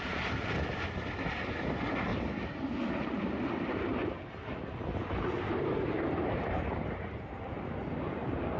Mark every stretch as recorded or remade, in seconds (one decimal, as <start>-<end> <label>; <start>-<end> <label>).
0.0-2.1 remade; 2.1-3.4 recorded; 3.4-3.9 remade; 3.9-5.6 recorded; 5.6-8.6 remade